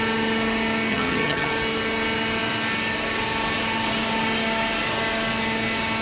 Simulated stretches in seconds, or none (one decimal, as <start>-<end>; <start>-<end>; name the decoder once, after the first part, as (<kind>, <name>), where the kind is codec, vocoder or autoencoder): 0.9-1.5 (vocoder, HiFi-GAN)